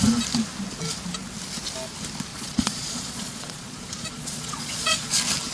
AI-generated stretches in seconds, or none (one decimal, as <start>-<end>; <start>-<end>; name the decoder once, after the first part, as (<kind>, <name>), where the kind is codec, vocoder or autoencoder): 2.3-5.1 (vocoder, Vocos)